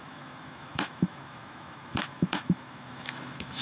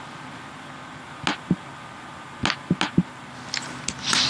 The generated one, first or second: first